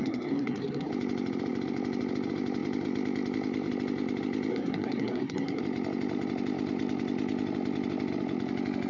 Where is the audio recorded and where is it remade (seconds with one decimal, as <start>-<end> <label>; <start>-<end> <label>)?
0.0-0.9 remade; 0.9-4.5 recorded; 4.5-5.6 remade; 5.6-8.9 recorded